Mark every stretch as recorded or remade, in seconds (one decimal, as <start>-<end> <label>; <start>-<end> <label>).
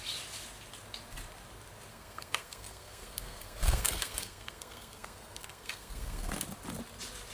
0.0-1.9 recorded; 1.9-6.3 remade; 6.3-7.3 recorded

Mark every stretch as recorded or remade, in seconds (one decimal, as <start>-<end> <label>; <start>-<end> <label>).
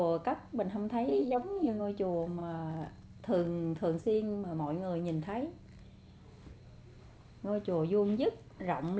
0.0-1.1 recorded; 1.1-1.8 remade; 1.8-9.0 recorded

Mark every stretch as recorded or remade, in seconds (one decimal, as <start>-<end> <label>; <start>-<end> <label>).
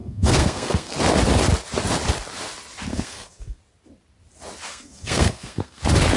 0.0-0.9 remade; 0.9-2.9 recorded; 2.9-3.6 remade; 3.6-4.7 recorded; 4.7-5.8 remade; 5.8-6.2 recorded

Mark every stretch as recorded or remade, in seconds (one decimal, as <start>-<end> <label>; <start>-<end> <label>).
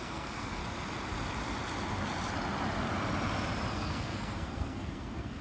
0.0-0.6 remade; 0.6-3.7 recorded; 3.7-5.4 remade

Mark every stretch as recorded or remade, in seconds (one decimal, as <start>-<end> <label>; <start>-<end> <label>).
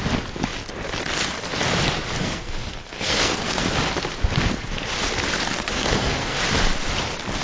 0.0-2.2 recorded; 2.2-3.7 remade; 3.7-5.7 recorded; 5.7-6.4 remade; 6.4-7.4 recorded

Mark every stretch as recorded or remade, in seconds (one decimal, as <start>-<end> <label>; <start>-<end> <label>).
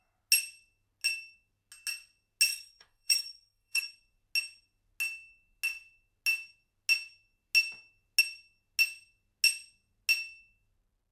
0.0-2.5 recorded; 2.5-3.9 remade; 3.9-11.1 recorded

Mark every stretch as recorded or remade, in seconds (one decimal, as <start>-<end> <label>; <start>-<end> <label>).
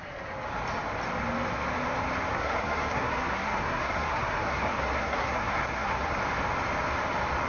0.0-2.3 recorded; 2.3-6.2 remade; 6.2-7.5 recorded